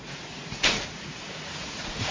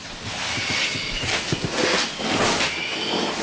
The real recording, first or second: second